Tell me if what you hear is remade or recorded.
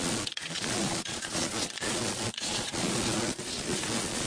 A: remade